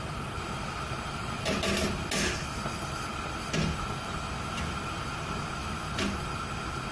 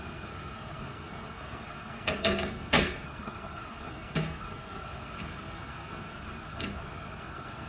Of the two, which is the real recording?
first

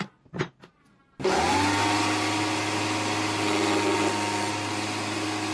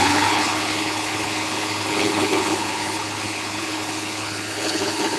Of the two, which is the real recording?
first